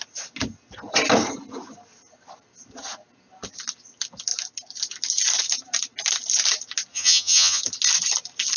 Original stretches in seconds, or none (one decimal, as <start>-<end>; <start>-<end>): 0.0-6.9; 7.6-8.6